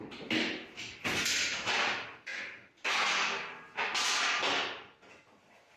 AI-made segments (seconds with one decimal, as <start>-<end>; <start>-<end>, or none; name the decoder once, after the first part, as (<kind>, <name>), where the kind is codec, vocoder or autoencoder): none